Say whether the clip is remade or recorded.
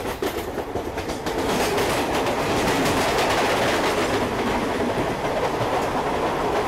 recorded